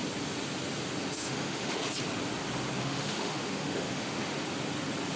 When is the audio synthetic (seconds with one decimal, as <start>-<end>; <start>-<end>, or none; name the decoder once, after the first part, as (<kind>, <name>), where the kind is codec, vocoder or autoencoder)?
1.1-1.8 (autoencoder, DAC-VAE); 2.8-4.2